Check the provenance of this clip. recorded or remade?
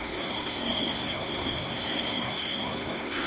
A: remade